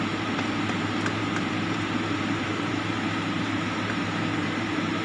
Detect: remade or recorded remade